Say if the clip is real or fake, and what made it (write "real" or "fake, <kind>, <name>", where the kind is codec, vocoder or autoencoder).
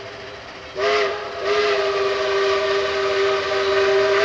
real